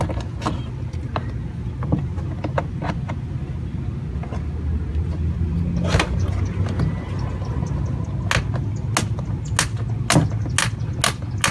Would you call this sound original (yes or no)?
yes